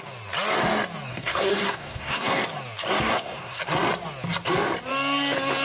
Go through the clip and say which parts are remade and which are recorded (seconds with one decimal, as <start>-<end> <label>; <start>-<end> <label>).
0.0-1.1 recorded; 1.1-2.4 remade; 2.4-3.1 recorded; 3.1-3.6 remade; 3.6-5.6 recorded